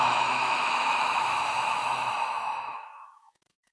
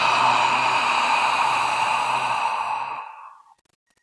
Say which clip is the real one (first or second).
second